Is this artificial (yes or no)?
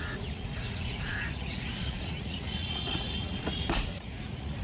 yes